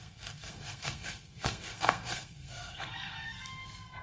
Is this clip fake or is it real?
fake